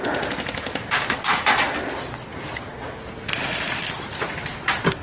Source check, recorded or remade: recorded